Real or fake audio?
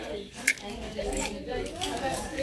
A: fake